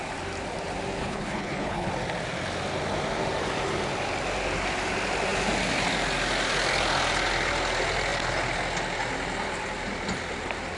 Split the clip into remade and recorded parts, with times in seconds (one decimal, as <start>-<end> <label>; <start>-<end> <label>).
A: 0.0-1.0 recorded; 1.0-1.9 remade; 1.9-10.8 recorded